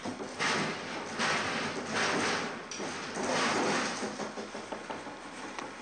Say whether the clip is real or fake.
real